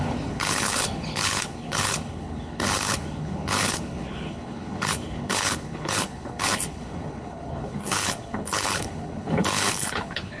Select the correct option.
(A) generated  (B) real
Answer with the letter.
A